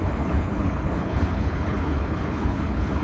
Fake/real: fake